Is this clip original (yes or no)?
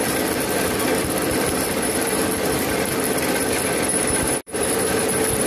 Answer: no